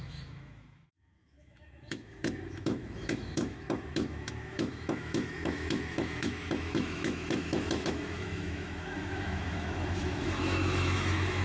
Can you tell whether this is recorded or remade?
remade